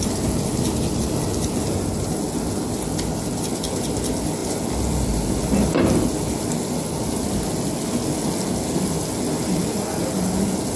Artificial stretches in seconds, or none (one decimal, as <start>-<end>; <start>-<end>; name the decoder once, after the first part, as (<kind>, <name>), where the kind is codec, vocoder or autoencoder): none